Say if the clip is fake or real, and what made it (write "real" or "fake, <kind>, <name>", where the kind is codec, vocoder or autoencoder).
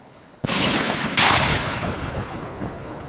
fake, codec, HILCodec